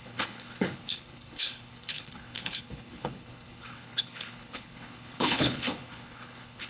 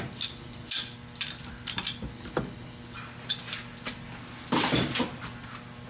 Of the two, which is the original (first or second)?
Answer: second